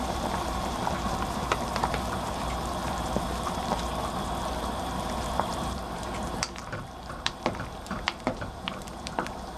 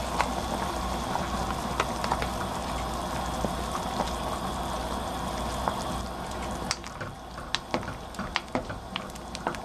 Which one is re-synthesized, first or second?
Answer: first